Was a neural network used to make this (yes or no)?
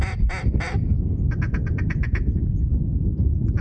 no